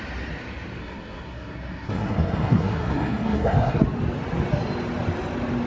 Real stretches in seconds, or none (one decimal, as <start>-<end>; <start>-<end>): 0.0-0.8; 3.8-5.7